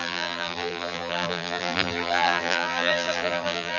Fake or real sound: fake